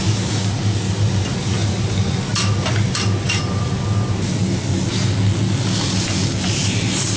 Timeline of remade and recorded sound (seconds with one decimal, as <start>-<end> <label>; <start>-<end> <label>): 0.0-7.2 recorded